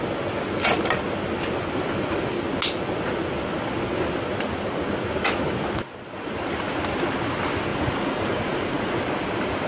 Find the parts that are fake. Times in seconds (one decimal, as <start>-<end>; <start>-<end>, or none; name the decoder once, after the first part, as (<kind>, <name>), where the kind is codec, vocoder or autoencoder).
7.7-9.0 (vocoder, Vocos)